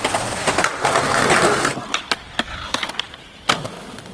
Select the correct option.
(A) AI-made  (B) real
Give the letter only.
B